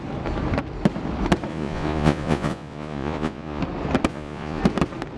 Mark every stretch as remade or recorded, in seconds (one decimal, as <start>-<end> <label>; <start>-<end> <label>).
0.0-1.5 recorded; 1.5-3.6 remade; 3.6-4.1 recorded; 4.1-4.6 remade; 4.6-5.2 recorded